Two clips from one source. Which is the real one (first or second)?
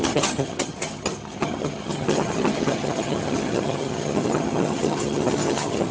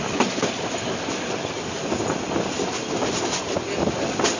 second